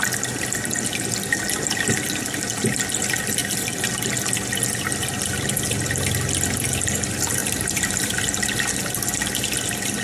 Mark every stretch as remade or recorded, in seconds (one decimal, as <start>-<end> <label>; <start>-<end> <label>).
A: 0.0-7.4 recorded; 7.4-8.2 remade; 8.2-10.0 recorded